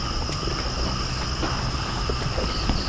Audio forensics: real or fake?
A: real